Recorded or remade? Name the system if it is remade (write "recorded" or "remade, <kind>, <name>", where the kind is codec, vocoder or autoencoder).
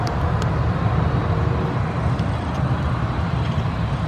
recorded